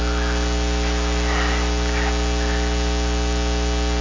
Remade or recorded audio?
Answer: recorded